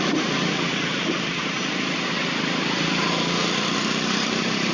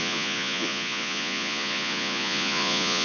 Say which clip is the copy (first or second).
second